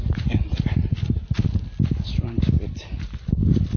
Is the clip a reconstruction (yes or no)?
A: no